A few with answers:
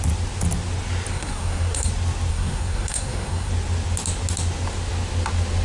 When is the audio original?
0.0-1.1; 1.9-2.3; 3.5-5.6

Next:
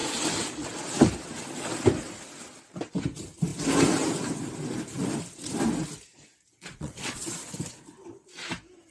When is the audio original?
0.0-6.1; 7.2-8.9

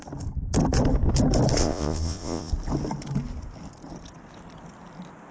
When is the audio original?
0.0-1.6; 2.5-5.3